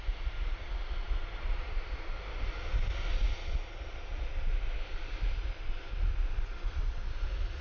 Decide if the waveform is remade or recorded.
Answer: recorded